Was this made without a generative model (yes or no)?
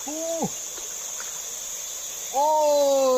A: yes